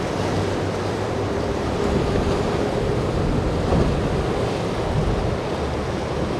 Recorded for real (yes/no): yes